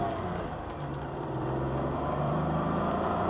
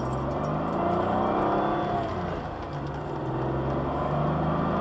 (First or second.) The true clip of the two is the second